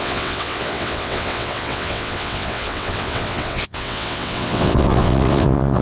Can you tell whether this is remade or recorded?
remade